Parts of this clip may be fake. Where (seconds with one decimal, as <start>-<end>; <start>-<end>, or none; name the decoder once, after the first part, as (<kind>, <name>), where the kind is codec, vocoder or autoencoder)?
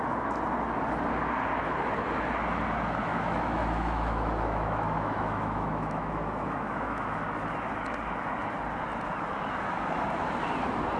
3.1-7.2 (autoencoder, DAC-VAE)